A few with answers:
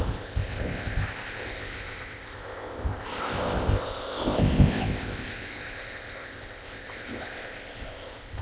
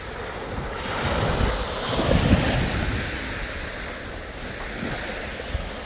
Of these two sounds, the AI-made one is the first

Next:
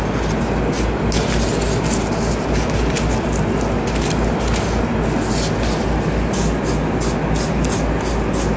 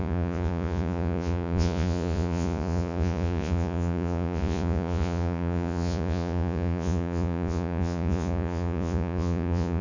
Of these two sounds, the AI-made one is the second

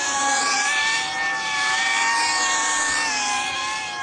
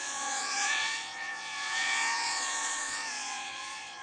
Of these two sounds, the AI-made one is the second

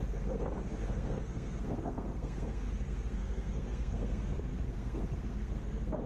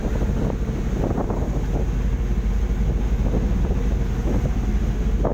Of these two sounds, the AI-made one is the first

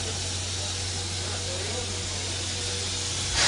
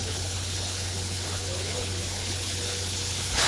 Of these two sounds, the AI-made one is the second